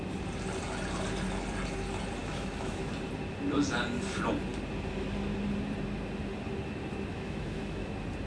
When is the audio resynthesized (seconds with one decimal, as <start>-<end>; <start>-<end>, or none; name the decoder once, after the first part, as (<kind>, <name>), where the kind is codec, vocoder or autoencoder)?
2.2-2.9 (autoencoder, DAC-VAE); 7.1-7.9